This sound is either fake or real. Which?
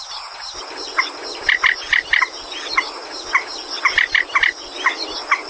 real